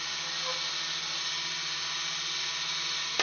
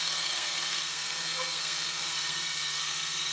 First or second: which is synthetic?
second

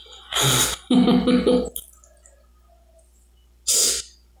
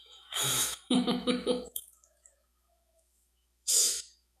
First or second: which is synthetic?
second